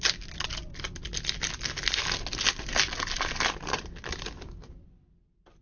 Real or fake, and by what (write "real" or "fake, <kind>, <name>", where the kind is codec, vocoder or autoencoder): real